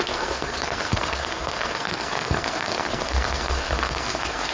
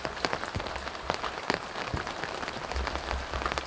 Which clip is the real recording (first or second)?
second